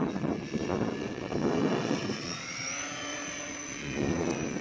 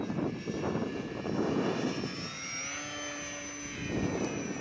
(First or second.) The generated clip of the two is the first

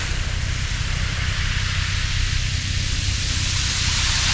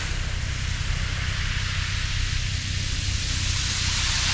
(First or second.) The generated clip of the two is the first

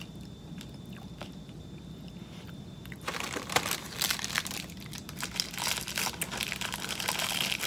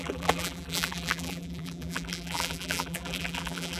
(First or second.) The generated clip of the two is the second